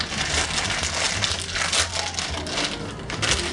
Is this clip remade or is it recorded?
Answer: recorded